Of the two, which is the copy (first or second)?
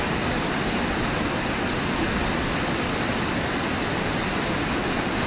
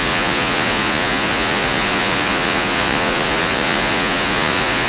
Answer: second